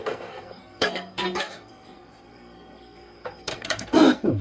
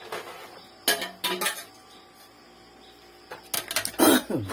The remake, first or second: first